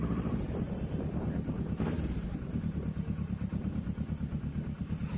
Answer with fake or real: real